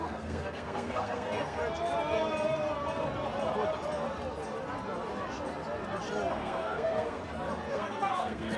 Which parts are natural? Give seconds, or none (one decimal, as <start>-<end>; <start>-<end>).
1.6-6.3; 7.2-7.7